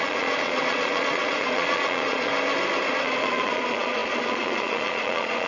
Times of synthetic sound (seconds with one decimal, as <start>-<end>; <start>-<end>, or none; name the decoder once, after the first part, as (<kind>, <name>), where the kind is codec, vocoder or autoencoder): 0.0-2.3 (vocoder, Vocos); 2.9-5.5